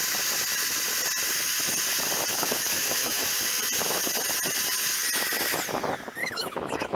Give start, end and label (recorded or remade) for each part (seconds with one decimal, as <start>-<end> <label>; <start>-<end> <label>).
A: 0.0-2.3 recorded; 2.3-3.3 remade; 3.3-6.2 recorded; 6.2-7.0 remade